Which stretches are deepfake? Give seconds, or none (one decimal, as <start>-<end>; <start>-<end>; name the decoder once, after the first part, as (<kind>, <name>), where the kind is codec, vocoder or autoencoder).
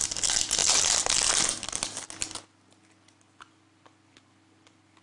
none